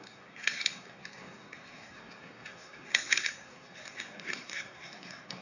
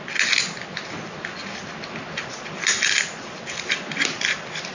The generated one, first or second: first